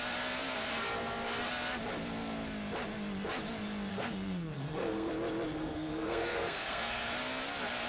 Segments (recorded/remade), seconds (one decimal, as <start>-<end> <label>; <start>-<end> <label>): 0.0-3.9 recorded; 3.9-5.1 remade; 5.1-5.6 recorded; 5.6-7.1 remade; 7.1-7.9 recorded